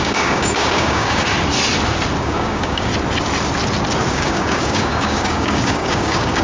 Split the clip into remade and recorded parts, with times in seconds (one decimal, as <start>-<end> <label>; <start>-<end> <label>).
0.0-1.3 remade; 1.3-2.2 recorded; 2.2-2.9 remade; 2.9-4.1 recorded; 4.1-6.4 remade